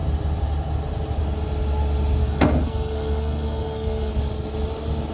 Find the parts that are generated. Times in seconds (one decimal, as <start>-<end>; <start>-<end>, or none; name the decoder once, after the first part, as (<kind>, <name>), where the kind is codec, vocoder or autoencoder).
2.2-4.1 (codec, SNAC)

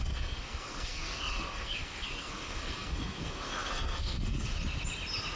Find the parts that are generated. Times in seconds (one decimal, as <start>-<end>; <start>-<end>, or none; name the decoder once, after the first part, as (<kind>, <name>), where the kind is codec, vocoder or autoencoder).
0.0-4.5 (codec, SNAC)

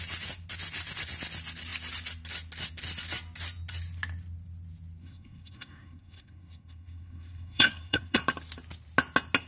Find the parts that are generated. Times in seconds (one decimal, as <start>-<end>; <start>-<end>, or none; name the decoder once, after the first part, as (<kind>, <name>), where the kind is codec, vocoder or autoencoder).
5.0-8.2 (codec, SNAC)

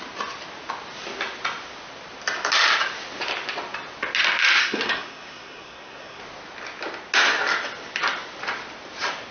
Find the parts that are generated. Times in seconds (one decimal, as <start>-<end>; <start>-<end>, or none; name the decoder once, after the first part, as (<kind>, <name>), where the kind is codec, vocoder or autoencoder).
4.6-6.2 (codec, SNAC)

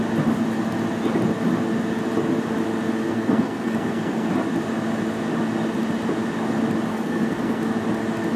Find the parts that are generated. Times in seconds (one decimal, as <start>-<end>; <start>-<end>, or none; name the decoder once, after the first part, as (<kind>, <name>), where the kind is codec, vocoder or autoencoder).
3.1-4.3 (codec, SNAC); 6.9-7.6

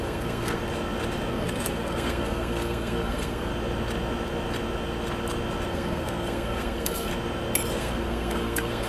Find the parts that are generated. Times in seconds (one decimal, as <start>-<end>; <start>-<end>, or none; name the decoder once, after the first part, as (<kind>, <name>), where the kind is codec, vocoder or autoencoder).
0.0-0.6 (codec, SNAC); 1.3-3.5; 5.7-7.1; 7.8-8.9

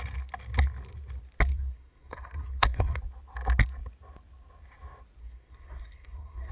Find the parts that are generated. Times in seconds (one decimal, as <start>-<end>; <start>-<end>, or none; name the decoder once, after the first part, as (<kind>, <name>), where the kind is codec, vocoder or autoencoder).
1.5-3.0 (codec, SNAC); 5.2-6.5

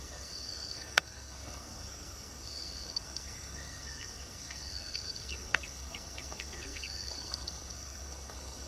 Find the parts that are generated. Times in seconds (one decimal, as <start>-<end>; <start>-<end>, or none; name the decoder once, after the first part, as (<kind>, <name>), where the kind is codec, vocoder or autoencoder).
0.0-8.7 (codec, SNAC)